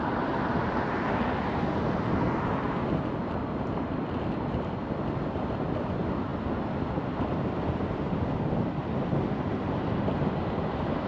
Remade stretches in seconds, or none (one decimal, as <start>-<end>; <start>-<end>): none

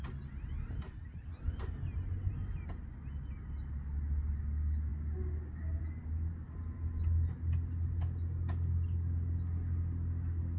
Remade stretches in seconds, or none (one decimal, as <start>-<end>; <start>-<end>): none